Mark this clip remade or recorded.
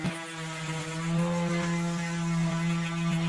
recorded